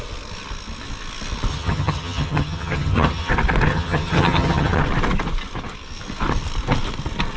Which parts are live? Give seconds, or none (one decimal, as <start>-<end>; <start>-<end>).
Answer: 0.0-1.5; 3.3-3.7; 4.8-7.4